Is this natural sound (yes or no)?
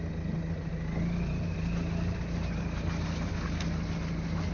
yes